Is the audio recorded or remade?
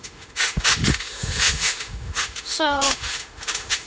remade